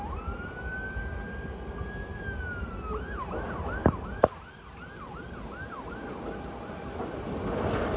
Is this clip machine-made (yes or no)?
no